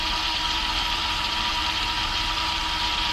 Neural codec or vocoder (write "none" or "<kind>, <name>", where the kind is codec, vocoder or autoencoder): vocoder, BigVGAN v2